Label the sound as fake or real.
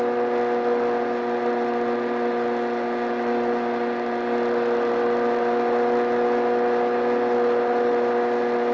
real